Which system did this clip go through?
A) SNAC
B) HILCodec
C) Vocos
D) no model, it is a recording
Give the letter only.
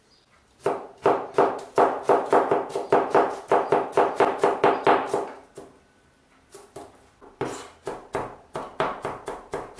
D